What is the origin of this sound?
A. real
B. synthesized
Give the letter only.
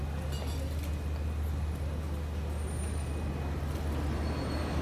A